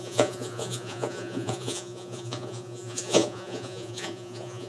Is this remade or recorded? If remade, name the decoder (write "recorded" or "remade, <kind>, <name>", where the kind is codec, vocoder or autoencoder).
remade, vocoder, Vocos